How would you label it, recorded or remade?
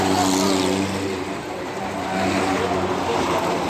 recorded